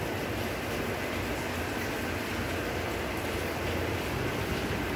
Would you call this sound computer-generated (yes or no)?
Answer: no